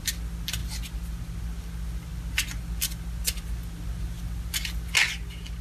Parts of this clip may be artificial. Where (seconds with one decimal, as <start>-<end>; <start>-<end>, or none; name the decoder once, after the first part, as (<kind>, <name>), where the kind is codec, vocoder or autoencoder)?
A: none